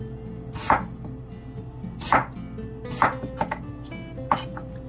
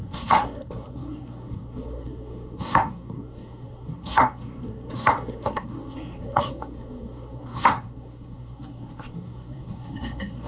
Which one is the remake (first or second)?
second